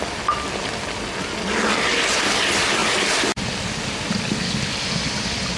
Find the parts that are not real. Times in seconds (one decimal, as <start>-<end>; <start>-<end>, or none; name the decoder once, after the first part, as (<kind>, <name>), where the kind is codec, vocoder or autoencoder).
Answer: none